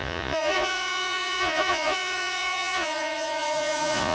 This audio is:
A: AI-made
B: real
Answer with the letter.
A